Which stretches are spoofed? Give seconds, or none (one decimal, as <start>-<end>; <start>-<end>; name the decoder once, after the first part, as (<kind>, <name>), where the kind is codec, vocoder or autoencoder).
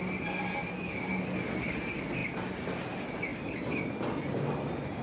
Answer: none